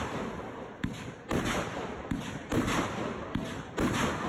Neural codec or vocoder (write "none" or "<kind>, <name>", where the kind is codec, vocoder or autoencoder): none